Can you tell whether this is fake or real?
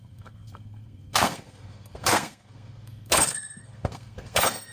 fake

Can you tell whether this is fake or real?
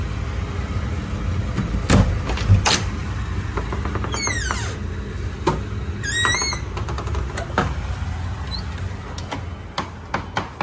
real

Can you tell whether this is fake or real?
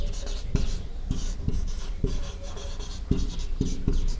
fake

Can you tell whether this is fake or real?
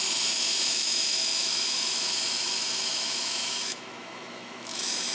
fake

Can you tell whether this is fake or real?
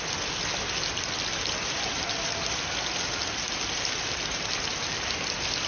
real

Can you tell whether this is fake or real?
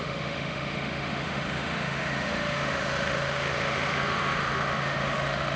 fake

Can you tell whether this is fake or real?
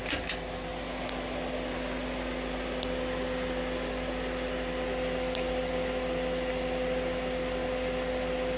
real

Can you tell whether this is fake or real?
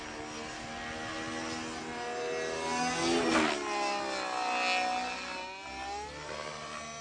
real